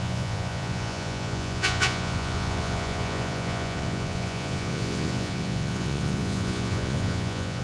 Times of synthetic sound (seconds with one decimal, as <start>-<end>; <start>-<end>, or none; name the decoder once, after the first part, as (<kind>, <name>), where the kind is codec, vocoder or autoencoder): 0.0-7.6 (vocoder, Vocos)